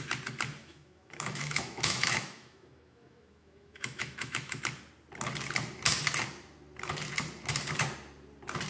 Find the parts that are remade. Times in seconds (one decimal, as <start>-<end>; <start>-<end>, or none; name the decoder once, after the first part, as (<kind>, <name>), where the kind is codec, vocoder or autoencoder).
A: 0.6-4.6 (autoencoder, DAC-VAE)